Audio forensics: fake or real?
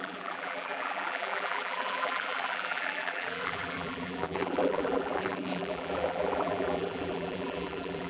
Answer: fake